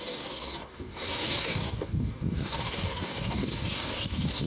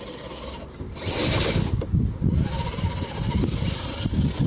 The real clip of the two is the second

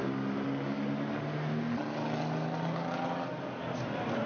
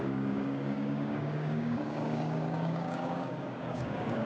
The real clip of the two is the first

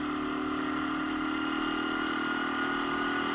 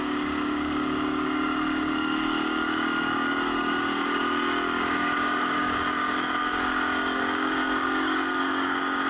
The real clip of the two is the first